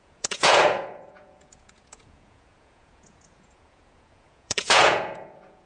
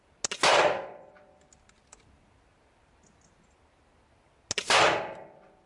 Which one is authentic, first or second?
second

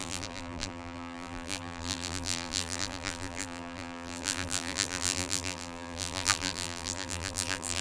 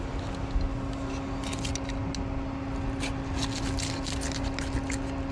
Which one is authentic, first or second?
second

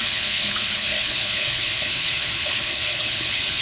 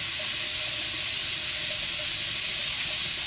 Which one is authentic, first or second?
second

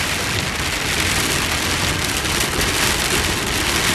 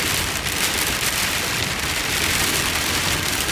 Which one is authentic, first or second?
first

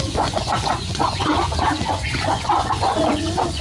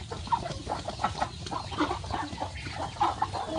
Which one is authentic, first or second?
second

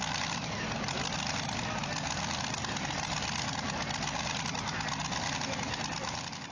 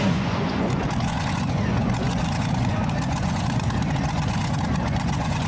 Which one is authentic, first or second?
first